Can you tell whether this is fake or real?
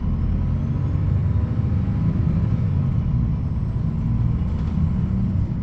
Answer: real